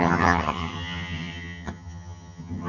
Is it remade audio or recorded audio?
remade